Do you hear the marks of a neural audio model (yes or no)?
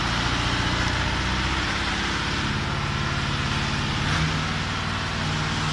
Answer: no